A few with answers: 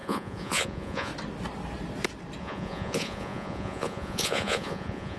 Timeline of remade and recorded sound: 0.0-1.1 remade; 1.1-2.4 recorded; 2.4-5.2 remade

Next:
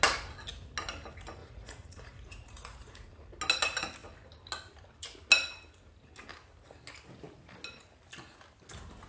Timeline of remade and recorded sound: 0.0-1.4 recorded; 1.4-3.1 remade; 3.1-9.1 recorded

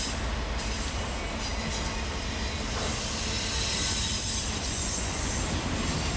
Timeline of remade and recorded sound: 0.0-4.6 recorded; 4.6-5.3 remade; 5.3-6.2 recorded

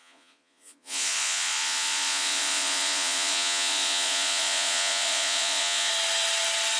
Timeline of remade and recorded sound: 0.0-5.9 remade; 5.9-6.8 recorded